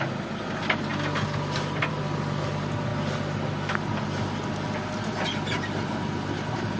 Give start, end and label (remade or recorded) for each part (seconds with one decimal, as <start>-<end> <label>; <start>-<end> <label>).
0.0-6.8 recorded